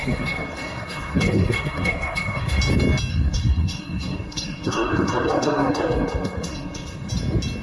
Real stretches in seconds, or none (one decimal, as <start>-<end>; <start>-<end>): 2.6-3.1; 7.1-7.6